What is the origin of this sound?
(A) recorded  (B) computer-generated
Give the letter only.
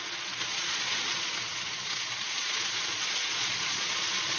B